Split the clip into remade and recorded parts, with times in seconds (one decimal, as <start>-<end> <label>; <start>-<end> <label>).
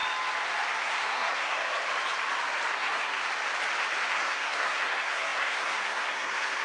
0.0-0.8 recorded; 0.8-1.7 remade; 1.7-2.7 recorded; 2.7-3.2 remade; 3.2-4.1 recorded; 4.1-6.6 remade